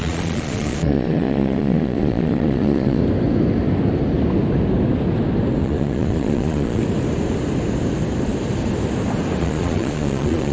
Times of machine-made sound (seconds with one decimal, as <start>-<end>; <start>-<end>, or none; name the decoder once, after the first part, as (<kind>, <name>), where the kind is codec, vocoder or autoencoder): 0.0-3.0 (vocoder, Vocos); 5.6-6.8; 9.4-10.5